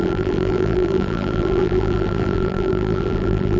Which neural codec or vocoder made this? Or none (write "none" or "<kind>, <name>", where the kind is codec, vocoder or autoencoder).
vocoder, BigVGAN v2